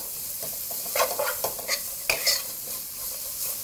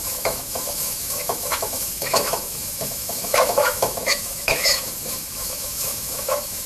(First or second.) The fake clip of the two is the second